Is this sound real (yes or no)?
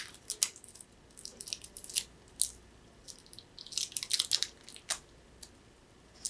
yes